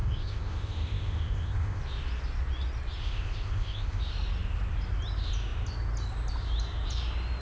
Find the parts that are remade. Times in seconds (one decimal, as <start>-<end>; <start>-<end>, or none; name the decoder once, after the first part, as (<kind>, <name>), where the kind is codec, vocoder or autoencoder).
0.0-1.8 (codec, ZipCodec); 3.0-4.0